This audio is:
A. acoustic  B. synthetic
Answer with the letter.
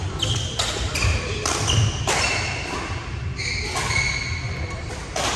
A